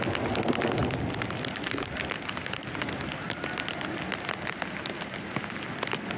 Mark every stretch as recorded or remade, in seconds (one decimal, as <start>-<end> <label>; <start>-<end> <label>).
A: 0.0-6.2 recorded